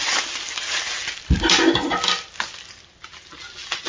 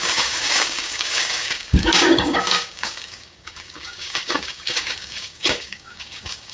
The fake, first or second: second